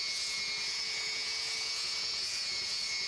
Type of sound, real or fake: fake